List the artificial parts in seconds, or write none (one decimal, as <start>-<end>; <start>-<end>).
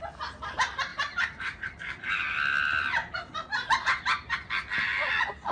0.9-2.1; 3.0-3.6